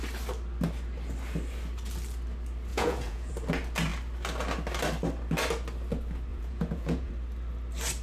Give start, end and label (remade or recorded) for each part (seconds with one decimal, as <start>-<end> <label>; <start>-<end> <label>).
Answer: 0.0-2.7 recorded; 2.7-3.3 remade; 3.3-6.3 recorded; 6.3-7.1 remade; 7.1-8.0 recorded